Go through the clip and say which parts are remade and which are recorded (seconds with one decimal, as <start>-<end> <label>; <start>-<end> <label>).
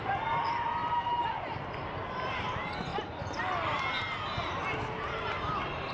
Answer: 0.0-0.8 remade; 0.8-1.3 recorded; 1.3-2.9 remade; 2.9-5.3 recorded; 5.3-5.9 remade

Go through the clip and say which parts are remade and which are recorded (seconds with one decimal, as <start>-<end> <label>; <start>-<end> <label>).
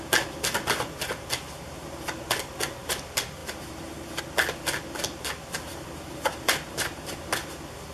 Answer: 0.0-3.4 recorded; 3.4-4.2 remade; 4.2-5.7 recorded; 5.7-7.5 remade; 7.5-7.9 recorded